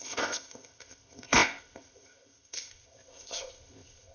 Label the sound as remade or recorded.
remade